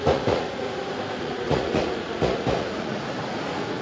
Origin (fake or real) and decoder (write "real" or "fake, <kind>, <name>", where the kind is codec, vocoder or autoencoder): fake, vocoder, Vocos